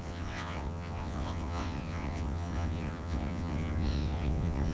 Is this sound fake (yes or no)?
yes